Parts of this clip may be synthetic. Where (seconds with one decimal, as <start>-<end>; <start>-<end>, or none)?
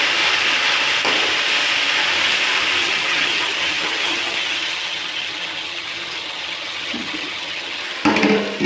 2.8-7.8